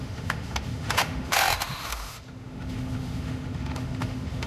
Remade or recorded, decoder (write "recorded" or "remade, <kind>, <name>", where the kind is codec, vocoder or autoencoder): remade, autoencoder, DAC-VAE